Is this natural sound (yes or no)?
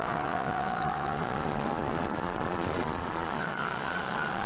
no